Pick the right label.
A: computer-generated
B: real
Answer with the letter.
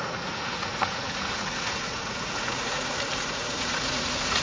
A